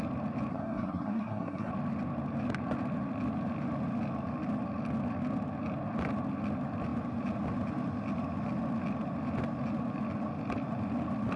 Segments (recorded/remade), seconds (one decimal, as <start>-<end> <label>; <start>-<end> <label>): 0.0-0.5 recorded; 0.5-1.7 remade; 1.7-11.4 recorded